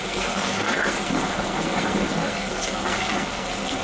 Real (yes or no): no